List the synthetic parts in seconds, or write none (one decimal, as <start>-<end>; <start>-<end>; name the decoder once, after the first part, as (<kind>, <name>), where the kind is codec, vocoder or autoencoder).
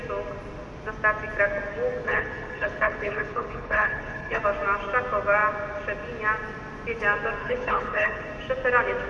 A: 2.0-4.4 (codec, HILCodec); 7.4-8.3